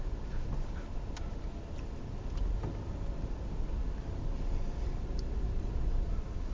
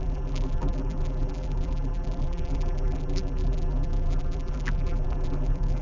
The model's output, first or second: second